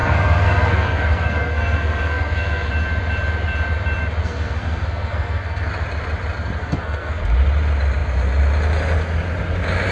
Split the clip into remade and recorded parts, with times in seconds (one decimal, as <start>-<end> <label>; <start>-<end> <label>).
0.0-2.7 remade; 2.7-4.2 recorded; 4.2-5.7 remade; 5.7-6.6 recorded; 6.6-7.2 remade; 7.2-9.9 recorded